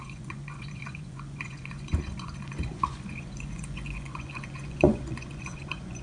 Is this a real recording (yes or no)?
no